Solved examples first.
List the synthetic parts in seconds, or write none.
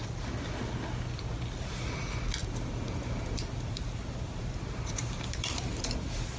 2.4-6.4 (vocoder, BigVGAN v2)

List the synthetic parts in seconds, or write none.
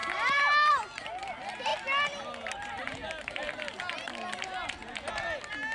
0.0-0.7 (vocoder, BigVGAN v2)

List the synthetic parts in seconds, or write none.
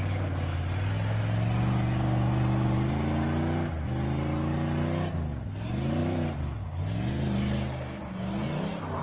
none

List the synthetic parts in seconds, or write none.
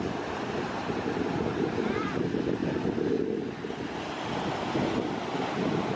0.0-2.6 (vocoder, BigVGAN v2); 5.5-6.0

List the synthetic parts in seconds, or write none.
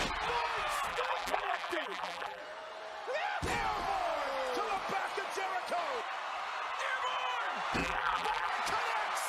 0.9-2.4 (vocoder, BigVGAN v2); 7.8-8.5